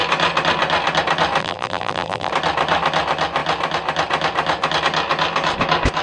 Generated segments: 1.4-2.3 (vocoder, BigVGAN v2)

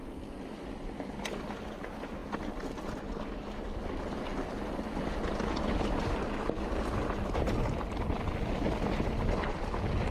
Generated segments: none

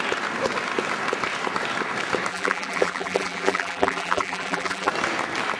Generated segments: 2.3-4.9 (vocoder, BigVGAN v2)

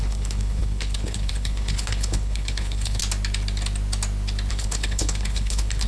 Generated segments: 0.0-3.0 (codec, HILCodec); 4.5-5.9

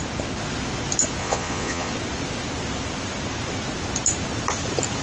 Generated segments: 1.2-1.9 (vocoder, Vocos)

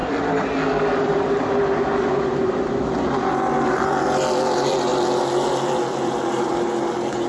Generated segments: none

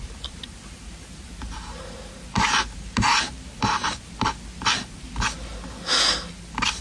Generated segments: 0.0-5.5 (vocoder, BigVGAN v2); 6.3-6.8

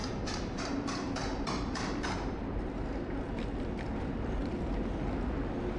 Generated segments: 0.0-3.2 (vocoder, BigVGAN v2)